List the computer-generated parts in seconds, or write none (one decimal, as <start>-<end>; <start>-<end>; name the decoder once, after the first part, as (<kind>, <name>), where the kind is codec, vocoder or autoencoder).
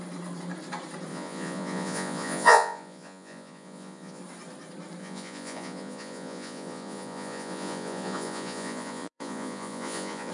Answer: 1.1-4.2 (vocoder, Vocos); 5.0-10.3